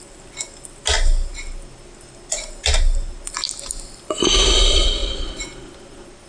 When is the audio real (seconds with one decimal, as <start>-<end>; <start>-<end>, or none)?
0.0-6.3